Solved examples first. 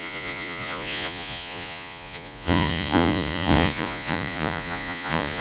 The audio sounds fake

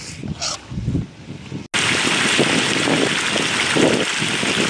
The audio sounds real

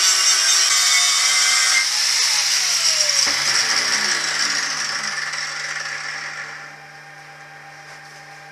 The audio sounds real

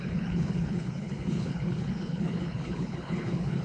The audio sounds fake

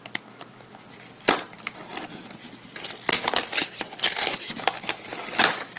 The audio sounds real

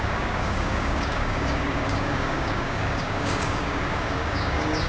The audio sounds fake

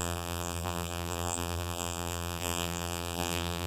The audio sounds fake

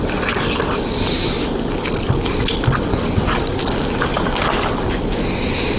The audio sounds real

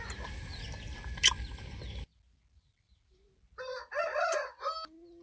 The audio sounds real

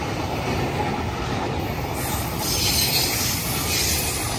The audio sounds real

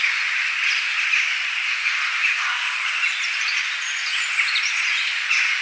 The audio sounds real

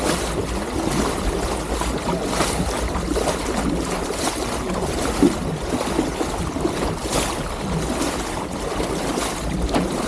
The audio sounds real